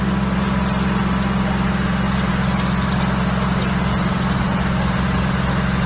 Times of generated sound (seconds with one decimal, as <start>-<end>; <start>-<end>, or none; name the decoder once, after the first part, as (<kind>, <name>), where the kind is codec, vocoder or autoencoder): none